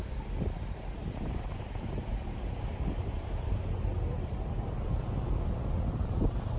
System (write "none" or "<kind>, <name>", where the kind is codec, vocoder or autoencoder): none